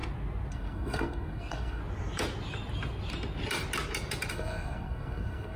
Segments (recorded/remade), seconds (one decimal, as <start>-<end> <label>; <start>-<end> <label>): 0.0-0.5 recorded; 0.5-1.8 remade; 1.8-4.3 recorded; 4.3-5.6 remade